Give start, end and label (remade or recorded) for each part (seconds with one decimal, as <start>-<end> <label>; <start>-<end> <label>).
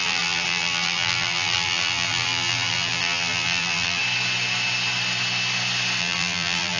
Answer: 0.0-4.0 remade; 4.0-6.0 recorded; 6.0-6.8 remade